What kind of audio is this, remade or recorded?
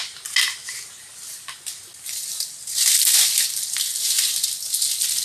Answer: recorded